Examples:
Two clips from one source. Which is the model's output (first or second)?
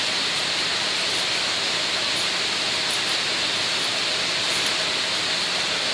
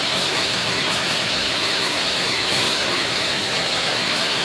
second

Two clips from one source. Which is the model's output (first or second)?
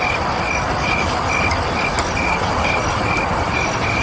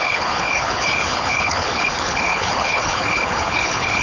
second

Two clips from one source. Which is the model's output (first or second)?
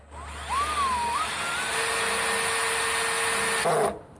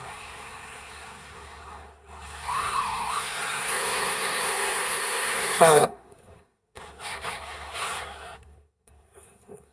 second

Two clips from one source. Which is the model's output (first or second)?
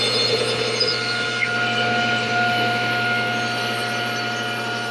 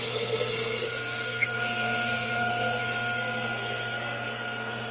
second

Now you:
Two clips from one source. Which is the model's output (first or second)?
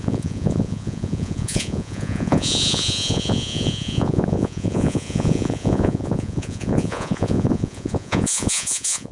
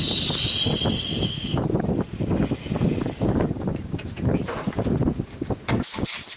first